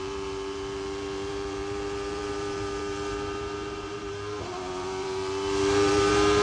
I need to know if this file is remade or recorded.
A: remade